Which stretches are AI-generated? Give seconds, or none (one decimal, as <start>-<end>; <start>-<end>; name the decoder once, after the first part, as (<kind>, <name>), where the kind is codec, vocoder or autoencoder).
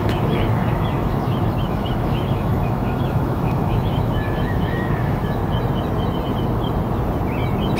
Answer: 0.0-5.4 (autoencoder, DAC-VAE)